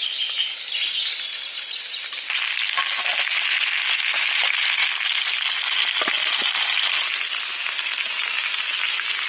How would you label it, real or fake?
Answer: real